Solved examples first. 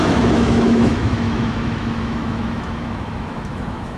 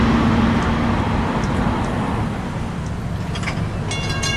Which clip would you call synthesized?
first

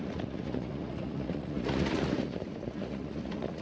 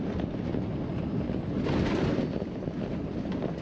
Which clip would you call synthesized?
first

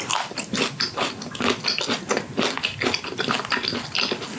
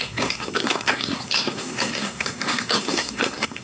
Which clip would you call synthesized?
second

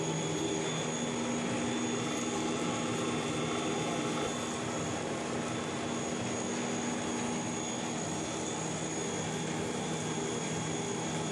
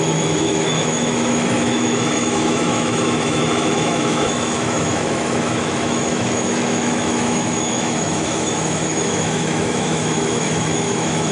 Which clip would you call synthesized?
second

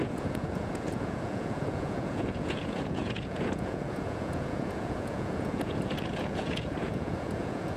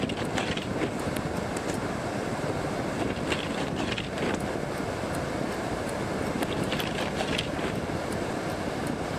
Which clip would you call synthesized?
first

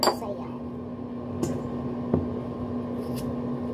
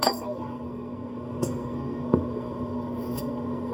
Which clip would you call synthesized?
second